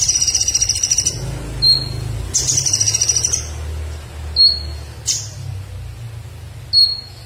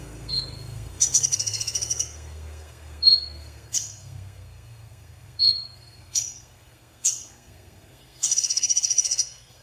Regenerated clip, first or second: second